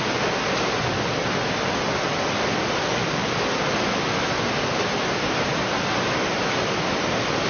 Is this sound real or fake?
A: real